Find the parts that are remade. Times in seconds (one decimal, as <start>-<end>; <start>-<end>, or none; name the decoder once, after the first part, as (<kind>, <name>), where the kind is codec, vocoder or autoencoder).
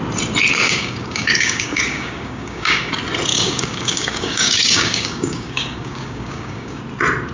0.5-2.9 (codec, DAC); 3.3-6.8